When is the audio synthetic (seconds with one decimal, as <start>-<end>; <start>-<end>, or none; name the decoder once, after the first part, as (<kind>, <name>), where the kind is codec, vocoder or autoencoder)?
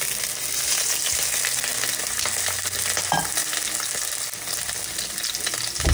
none